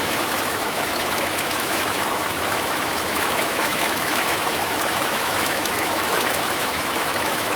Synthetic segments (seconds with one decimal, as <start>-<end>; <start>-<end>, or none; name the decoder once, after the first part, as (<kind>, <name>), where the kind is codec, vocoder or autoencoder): 0.0-7.6 (autoencoder, DAC-VAE)